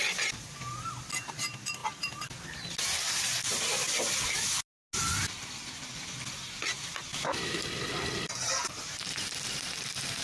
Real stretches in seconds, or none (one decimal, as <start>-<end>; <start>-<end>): 0.0-7.1; 7.6-10.2

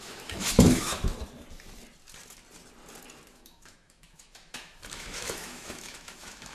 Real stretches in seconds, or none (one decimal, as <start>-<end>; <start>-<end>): 1.0-3.3